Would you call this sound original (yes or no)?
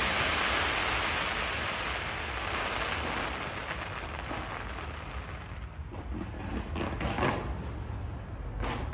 yes